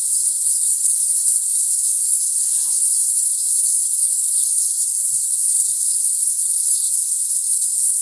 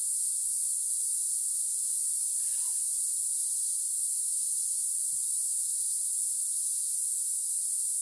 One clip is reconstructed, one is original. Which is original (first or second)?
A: second